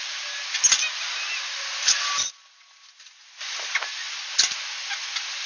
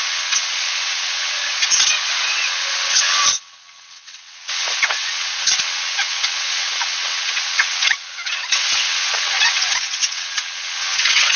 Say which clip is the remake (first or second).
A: second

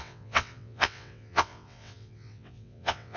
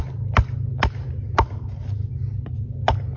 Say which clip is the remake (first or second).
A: first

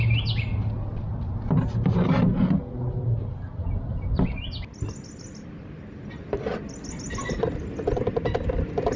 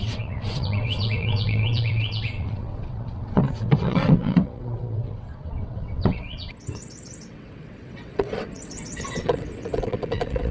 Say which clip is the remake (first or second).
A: second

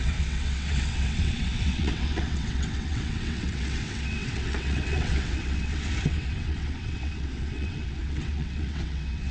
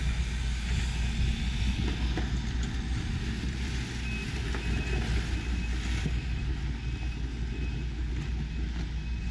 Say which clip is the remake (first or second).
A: first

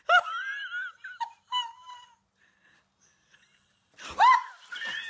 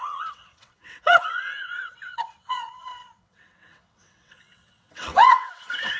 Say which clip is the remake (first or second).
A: second